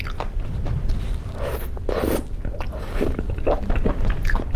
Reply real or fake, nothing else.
real